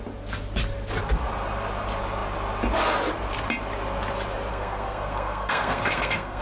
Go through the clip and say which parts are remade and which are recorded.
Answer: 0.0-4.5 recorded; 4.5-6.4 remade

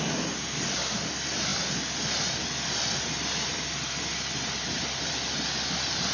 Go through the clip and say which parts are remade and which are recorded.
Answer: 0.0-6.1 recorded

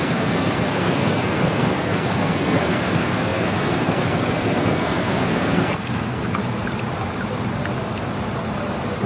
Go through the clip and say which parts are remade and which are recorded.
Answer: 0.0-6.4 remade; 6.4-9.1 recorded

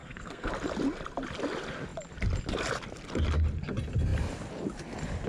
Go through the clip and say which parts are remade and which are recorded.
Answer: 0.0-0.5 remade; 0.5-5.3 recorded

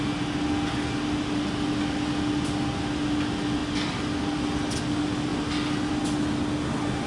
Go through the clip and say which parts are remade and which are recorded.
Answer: 0.0-7.1 recorded

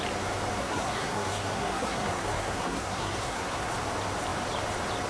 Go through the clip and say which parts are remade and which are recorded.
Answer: 0.0-0.6 recorded; 0.6-3.7 remade; 3.7-5.1 recorded

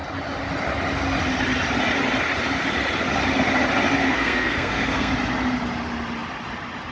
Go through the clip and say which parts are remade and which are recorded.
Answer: 0.0-4.0 recorded; 4.0-5.1 remade; 5.1-6.9 recorded